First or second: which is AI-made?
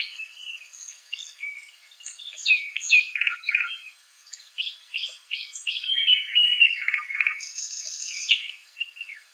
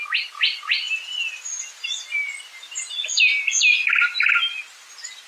first